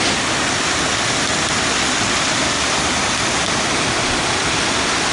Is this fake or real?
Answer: real